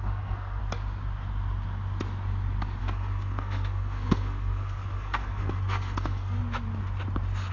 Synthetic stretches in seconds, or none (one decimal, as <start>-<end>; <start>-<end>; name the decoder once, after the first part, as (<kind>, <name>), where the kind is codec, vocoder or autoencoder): 0.0-0.6 (codec, SNAC); 2.8-6.4

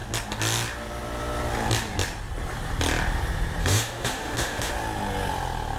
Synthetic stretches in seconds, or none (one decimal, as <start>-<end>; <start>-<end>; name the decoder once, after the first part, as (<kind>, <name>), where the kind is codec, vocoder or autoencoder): 3.6-4.7 (autoencoder, DAC-VAE)

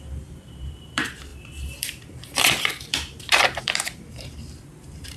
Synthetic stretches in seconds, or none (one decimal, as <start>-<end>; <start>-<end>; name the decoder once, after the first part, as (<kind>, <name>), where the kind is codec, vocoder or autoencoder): 0.0-5.2 (vocoder, BigVGAN v2)

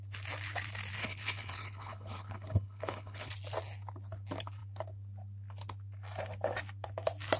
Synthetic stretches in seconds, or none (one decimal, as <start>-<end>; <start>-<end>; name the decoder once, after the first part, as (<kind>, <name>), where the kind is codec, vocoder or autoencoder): 1.0-3.3 (codec, HILCodec)

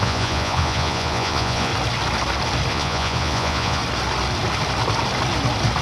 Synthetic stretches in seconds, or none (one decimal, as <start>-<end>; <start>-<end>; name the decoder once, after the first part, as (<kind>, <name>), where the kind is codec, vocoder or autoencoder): 0.0-1.7 (vocoder, Vocos); 2.7-3.8

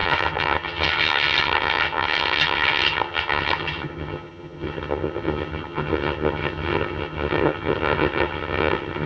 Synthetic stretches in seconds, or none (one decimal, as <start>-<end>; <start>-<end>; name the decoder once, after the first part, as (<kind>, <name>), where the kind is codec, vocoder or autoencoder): 0.0-9.1 (vocoder, HiFi-GAN)